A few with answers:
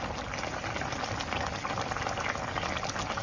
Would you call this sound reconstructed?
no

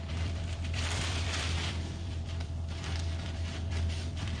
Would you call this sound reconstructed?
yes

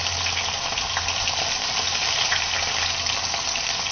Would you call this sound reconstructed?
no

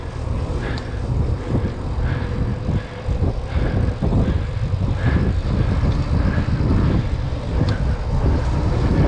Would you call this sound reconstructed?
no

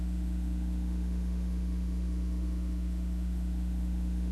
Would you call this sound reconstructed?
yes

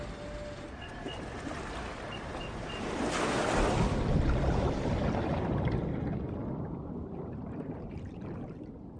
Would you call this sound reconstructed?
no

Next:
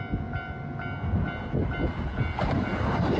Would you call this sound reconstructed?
no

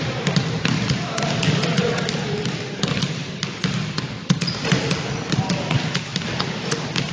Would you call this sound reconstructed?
no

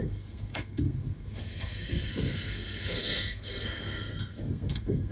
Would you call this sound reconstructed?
yes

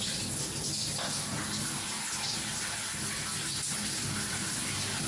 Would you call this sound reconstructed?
no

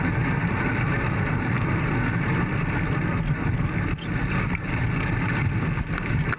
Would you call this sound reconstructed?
no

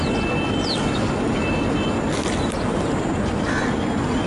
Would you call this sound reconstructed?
no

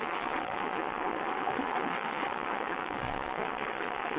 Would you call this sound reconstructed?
yes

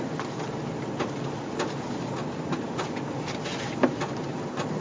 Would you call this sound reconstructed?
no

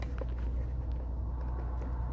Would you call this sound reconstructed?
no